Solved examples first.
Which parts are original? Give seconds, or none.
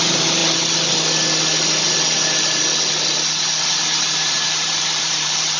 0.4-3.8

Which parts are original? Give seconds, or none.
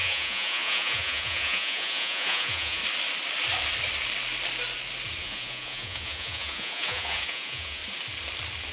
2.8-5.2; 7.8-8.7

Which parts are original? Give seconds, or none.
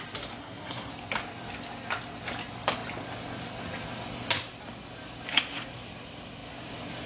0.0-0.4; 0.9-7.1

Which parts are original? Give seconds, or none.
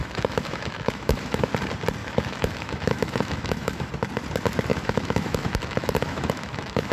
1.5-2.0; 3.9-4.7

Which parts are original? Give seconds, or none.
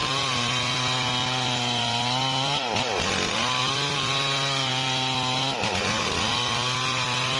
0.0-7.4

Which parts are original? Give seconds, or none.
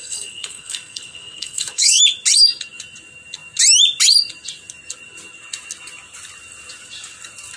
2.0-7.6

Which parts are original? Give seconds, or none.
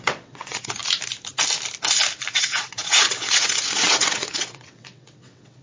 0.8-2.3